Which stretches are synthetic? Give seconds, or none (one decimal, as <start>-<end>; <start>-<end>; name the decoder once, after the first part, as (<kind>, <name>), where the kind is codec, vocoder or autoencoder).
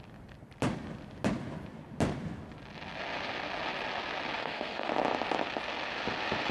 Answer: 4.4-4.9 (codec, SNAC)